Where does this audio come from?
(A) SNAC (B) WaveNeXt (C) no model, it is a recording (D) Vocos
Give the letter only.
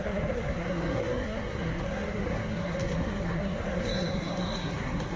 A